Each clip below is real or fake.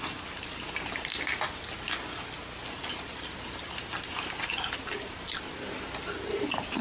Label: real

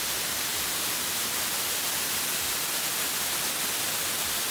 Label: real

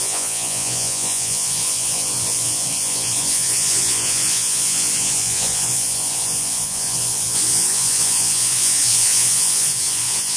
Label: fake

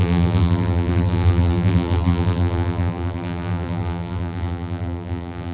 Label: fake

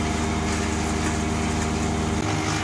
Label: real